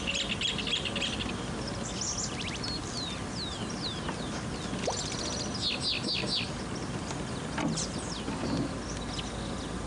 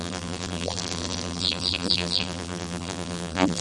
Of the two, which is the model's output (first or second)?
second